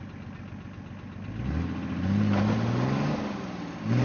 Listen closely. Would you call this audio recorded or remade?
recorded